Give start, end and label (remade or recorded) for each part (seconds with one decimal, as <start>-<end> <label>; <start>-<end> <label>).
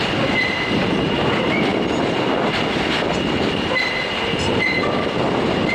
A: 0.0-5.7 recorded